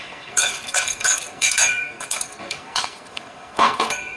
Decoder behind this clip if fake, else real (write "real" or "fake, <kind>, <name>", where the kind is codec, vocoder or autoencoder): fake, codec, SNAC